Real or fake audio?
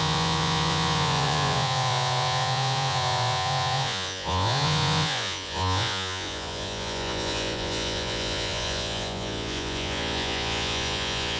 fake